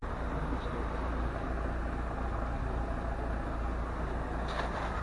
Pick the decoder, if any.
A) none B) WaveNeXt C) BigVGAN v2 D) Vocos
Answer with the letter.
A